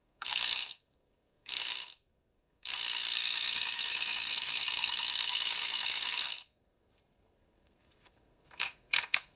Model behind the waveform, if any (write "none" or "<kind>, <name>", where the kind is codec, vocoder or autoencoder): codec, SNAC